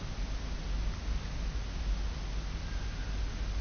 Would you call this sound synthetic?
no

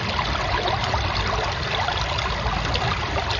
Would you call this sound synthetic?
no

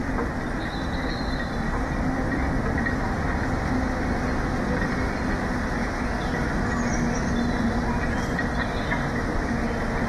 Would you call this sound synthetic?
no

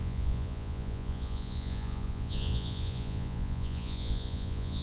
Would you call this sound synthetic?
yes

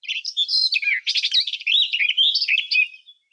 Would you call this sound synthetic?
no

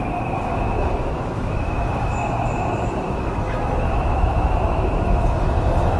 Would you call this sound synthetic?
yes